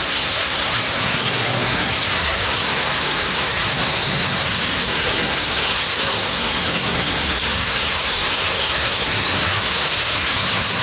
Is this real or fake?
fake